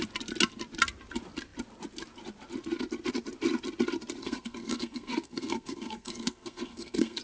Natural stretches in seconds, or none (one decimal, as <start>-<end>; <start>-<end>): 0.0-4.2